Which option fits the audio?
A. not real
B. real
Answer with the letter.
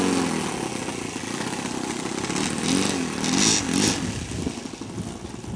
B